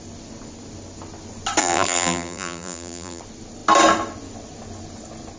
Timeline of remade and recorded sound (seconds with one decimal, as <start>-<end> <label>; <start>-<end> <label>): 0.0-1.6 recorded; 1.6-3.2 remade; 3.2-5.4 recorded